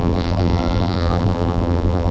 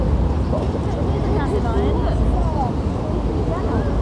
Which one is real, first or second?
second